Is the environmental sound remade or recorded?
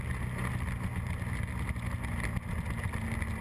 recorded